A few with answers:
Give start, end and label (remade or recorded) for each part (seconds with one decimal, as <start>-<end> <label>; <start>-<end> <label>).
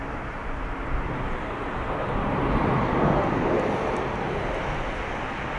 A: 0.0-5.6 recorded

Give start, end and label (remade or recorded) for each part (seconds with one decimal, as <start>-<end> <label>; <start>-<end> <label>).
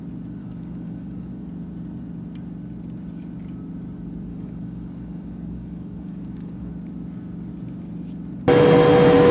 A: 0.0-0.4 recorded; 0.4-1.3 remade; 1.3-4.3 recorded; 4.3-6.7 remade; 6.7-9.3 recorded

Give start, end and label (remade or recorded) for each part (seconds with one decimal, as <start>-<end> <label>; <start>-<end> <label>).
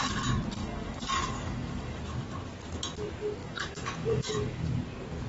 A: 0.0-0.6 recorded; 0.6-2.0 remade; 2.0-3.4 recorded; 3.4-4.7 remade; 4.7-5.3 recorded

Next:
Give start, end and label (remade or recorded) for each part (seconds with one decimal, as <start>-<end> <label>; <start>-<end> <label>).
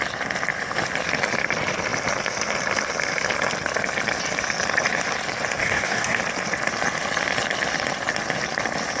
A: 0.0-5.6 recorded; 5.6-6.2 remade; 6.2-9.0 recorded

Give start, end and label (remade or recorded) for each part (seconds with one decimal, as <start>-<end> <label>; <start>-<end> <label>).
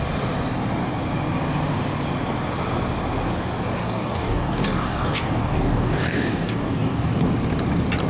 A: 0.0-3.8 recorded; 3.8-7.1 remade; 7.1-8.1 recorded